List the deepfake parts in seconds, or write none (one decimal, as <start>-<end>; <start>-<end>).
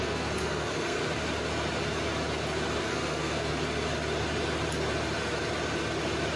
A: 0.0-1.0; 2.8-3.5